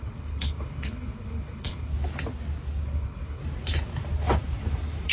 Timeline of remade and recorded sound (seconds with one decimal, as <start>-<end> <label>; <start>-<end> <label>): 0.0-1.9 remade; 1.9-2.8 recorded; 2.8-3.4 remade; 3.4-5.1 recorded